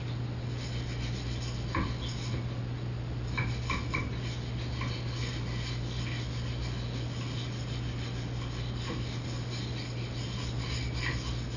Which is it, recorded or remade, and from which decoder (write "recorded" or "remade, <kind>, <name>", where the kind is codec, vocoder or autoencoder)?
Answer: recorded